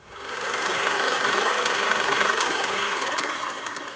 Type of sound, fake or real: fake